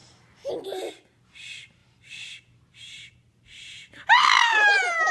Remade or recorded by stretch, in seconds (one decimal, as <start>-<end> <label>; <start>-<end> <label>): 0.0-0.5 remade; 0.5-1.8 recorded; 1.8-5.1 remade